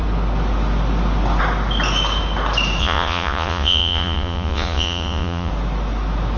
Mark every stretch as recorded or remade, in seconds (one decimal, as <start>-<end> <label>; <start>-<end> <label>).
0.0-2.8 recorded; 2.8-5.5 remade; 5.5-6.4 recorded